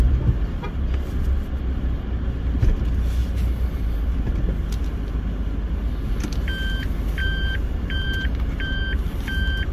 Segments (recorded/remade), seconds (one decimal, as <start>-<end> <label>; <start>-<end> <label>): 0.0-3.2 recorded; 3.2-3.9 remade; 3.9-7.2 recorded; 7.2-8.8 remade; 8.8-9.7 recorded

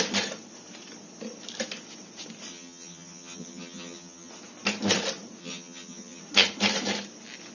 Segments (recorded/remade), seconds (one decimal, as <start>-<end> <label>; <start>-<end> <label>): 0.0-2.5 recorded; 2.5-4.3 remade; 4.3-5.4 recorded; 5.4-6.2 remade; 6.2-7.5 recorded

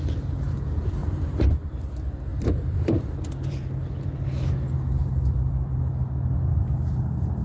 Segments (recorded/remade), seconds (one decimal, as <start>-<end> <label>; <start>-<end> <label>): 0.0-1.0 recorded; 1.0-1.7 remade; 1.7-2.3 recorded; 2.3-4.2 remade; 4.2-5.0 recorded; 5.0-5.9 remade; 5.9-7.4 recorded

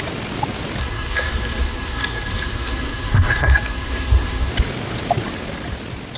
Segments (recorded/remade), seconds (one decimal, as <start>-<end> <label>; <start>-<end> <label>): 0.0-0.8 recorded; 0.8-4.5 remade; 4.5-6.2 recorded

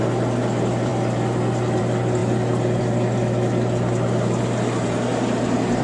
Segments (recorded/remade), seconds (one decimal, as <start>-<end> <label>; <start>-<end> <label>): 0.0-5.8 recorded

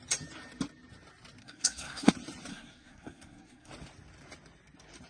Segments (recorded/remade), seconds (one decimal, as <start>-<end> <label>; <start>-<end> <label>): 0.0-1.4 recorded; 1.4-2.1 remade; 2.1-2.5 recorded; 2.5-3.7 remade; 3.7-5.1 recorded

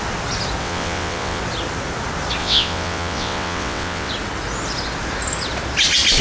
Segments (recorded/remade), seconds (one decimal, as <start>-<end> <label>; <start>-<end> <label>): 0.0-0.6 recorded; 0.6-1.4 remade; 1.4-2.4 recorded; 2.4-4.1 remade; 4.1-6.2 recorded

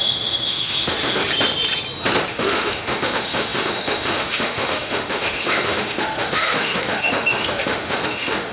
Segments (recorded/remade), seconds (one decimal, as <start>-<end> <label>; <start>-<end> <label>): 0.0-1.2 remade; 1.2-2.3 recorded; 2.3-8.5 remade